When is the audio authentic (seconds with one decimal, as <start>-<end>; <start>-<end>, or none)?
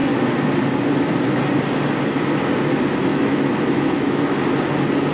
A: 0.0-3.1; 4.2-5.1